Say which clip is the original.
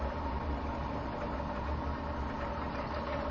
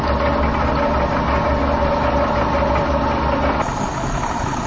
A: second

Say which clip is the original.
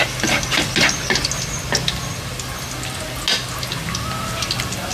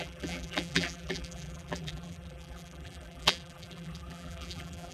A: first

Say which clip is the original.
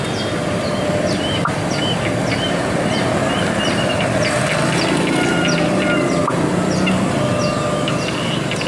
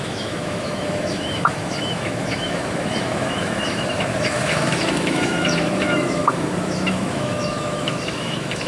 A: first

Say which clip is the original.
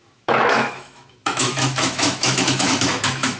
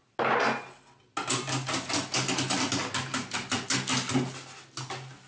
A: second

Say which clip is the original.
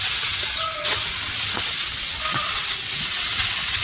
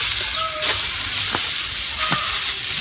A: second